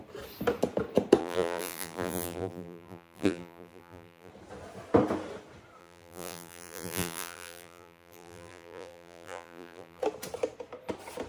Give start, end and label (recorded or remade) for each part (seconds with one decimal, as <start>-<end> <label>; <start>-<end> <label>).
0.0-1.2 recorded; 1.2-4.3 remade; 4.3-5.8 recorded; 5.8-10.0 remade; 10.0-11.3 recorded